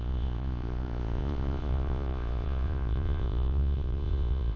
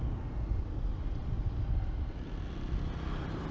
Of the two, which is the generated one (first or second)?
first